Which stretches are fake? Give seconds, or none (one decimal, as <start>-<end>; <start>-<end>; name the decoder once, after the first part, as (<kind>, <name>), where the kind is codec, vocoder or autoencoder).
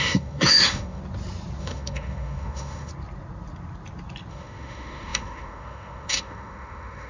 0.0-1.0 (autoencoder, DAC-VAE); 1.6-2.9; 4.3-7.1